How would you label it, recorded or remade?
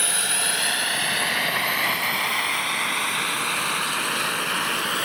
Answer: recorded